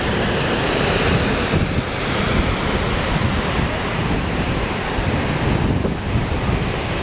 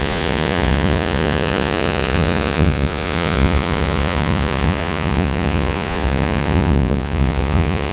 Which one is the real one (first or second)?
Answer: first